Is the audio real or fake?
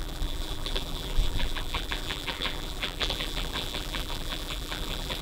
fake